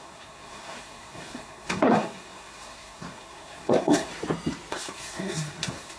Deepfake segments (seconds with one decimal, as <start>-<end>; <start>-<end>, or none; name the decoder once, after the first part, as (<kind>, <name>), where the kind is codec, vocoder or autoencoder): 0.0-4.1 (codec, SNAC); 4.7-6.0